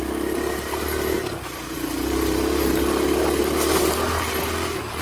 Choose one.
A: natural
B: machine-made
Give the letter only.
A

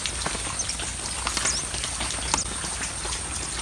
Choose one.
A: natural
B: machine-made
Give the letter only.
A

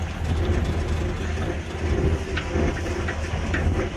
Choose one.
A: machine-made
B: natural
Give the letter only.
B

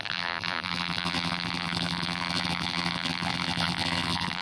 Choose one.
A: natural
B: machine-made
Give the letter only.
B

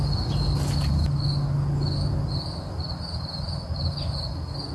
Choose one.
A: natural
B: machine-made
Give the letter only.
A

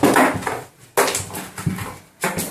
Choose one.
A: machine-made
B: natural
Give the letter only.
B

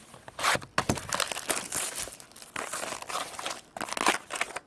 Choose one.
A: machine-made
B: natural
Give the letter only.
B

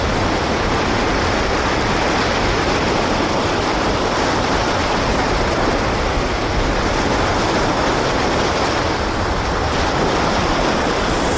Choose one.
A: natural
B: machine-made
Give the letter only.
B